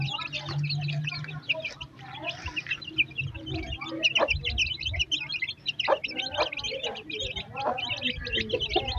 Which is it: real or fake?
real